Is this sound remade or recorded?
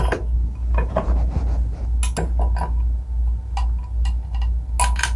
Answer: recorded